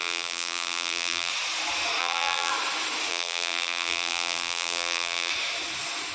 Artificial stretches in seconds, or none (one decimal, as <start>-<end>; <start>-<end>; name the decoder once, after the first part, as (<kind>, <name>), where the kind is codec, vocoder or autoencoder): 0.0-1.3 (vocoder, BigVGAN v2); 2.0-2.5; 3.1-5.3